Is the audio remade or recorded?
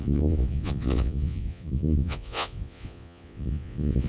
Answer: remade